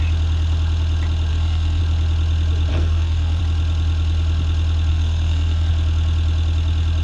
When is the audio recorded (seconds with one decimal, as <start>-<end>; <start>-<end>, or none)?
0.0-1.3; 1.8-2.7; 3.4-4.9; 5.7-7.0